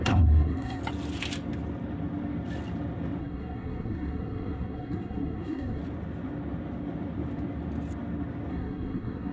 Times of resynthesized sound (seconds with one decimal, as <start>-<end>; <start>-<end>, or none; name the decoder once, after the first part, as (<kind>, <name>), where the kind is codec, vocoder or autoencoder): 0.0-0.8 (codec, SNAC); 3.2-5.8; 8.5-9.3